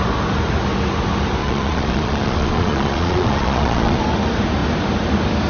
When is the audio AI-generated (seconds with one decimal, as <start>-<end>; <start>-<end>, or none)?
1.4-4.0